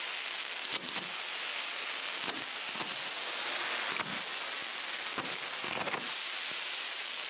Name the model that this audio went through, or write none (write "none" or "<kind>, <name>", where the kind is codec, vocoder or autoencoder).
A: none